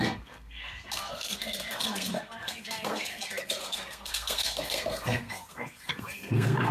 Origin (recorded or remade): remade